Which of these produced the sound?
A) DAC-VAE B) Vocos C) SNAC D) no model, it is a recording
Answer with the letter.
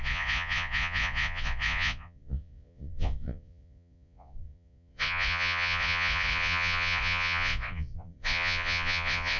B